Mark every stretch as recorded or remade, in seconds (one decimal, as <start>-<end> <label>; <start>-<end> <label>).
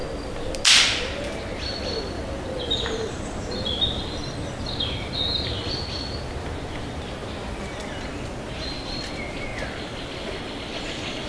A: 0.0-11.3 recorded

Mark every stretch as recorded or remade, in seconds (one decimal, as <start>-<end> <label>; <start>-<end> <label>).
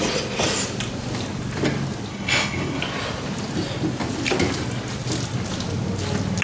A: 0.0-2.1 recorded; 2.1-2.8 remade; 2.8-6.4 recorded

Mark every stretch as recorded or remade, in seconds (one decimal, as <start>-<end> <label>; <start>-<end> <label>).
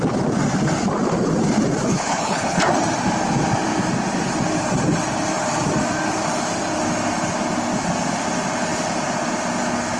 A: 0.0-1.9 recorded; 1.9-2.6 remade; 2.6-10.0 recorded